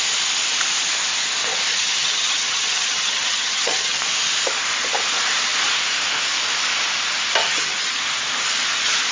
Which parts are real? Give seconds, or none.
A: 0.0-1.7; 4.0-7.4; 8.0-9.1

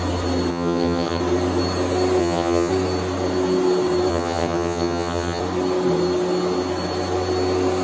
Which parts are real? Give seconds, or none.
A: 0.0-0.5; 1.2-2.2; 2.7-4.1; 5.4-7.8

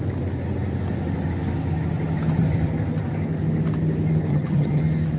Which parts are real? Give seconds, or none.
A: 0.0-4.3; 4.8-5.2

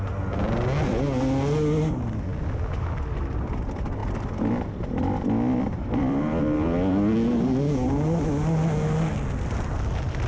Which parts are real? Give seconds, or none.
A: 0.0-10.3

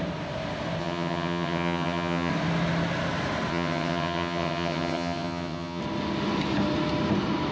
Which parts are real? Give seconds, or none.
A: 0.0-0.8; 2.3-3.5; 5.8-7.5

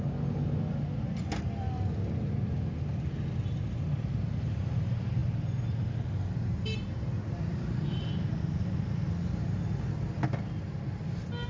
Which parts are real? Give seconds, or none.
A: 0.0-11.5

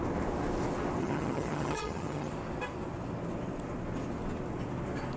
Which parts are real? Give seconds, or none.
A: 0.0-1.0; 2.3-5.2